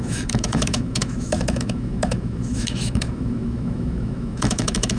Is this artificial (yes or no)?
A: yes